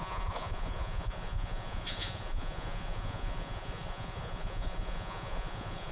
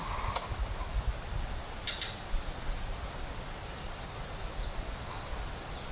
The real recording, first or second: second